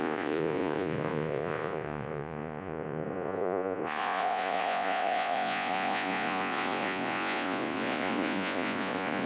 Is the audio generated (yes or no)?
yes